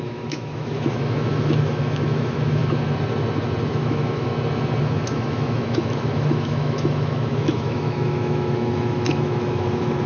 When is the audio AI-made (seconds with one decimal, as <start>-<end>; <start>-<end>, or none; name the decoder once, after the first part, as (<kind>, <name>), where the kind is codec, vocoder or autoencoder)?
0.0-2.6 (autoencoder, DAC-VAE); 3.7-4.3; 4.8-10.1